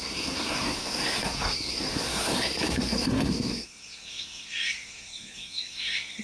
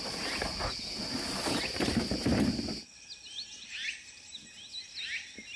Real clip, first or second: second